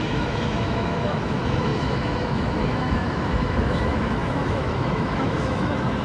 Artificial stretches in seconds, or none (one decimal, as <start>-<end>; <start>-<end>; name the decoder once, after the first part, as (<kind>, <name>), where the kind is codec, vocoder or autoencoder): 0.0-6.0 (autoencoder, DAC-VAE)